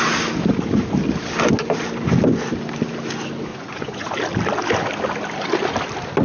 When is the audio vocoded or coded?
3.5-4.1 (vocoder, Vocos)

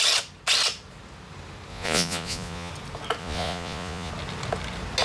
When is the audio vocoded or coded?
1.7-2.7 (vocoder, Vocos); 3.2-4.1

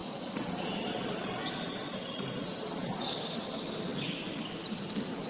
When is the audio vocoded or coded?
0.0-3.2 (vocoder, Vocos)

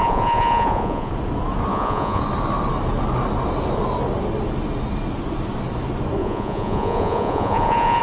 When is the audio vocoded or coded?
0.0-1.1 (vocoder, Vocos); 1.7-2.2; 6.2-8.0

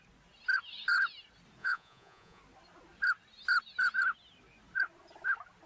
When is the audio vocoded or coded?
1.6-2.4 (vocoder, Vocos)

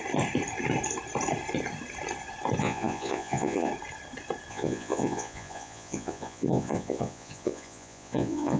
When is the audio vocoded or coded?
2.6-3.7 (vocoder, Vocos); 4.5-8.6